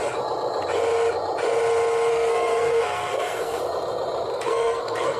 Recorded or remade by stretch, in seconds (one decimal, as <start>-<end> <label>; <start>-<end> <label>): 0.0-2.1 recorded; 2.1-3.6 remade; 3.6-4.3 recorded; 4.3-5.2 remade